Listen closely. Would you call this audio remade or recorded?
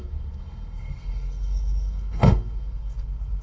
remade